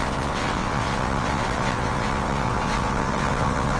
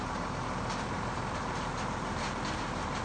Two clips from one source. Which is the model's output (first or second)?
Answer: first